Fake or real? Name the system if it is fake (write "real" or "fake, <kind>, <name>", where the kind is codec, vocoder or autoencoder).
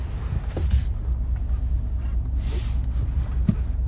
real